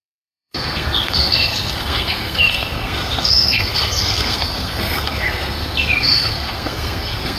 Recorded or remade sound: remade